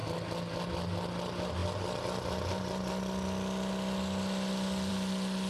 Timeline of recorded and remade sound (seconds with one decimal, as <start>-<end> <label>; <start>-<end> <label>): 0.0-5.5 recorded